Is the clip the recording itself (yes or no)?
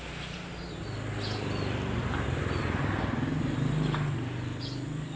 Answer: yes